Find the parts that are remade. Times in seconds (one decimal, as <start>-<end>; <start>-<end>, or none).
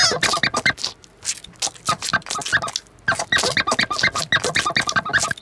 none